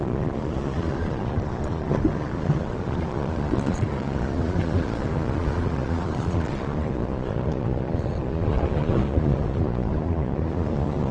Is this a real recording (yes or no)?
no